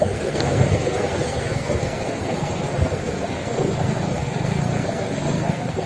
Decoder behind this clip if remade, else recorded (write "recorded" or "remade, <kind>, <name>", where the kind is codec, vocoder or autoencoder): remade, codec, SNAC